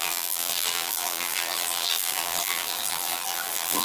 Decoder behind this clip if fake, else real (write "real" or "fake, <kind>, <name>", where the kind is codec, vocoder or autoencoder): fake, vocoder, BigVGAN v2